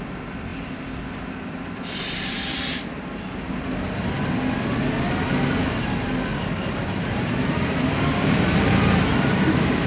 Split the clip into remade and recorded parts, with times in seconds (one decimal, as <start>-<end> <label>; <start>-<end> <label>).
0.0-6.3 recorded; 6.3-8.7 remade; 8.7-9.1 recorded; 9.1-9.9 remade